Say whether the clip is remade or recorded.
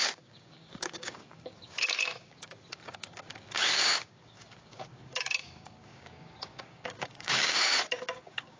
remade